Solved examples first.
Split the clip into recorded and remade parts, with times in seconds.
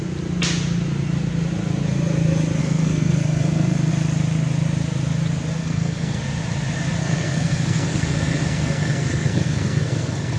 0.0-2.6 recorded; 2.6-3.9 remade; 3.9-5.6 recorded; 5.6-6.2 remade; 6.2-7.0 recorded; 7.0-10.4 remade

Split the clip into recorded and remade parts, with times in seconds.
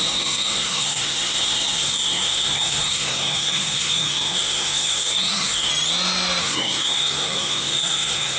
0.0-5.7 remade; 5.7-6.4 recorded; 6.4-8.4 remade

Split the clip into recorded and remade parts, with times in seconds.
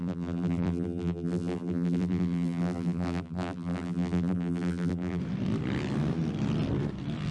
0.0-5.2 remade; 5.2-7.3 recorded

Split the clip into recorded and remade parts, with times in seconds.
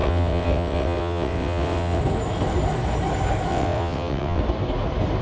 0.0-2.0 remade; 2.0-3.5 recorded; 3.5-4.4 remade; 4.4-5.2 recorded